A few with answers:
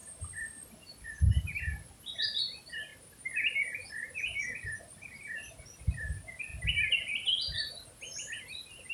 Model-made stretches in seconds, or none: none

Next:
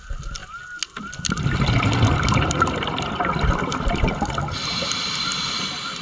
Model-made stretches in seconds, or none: none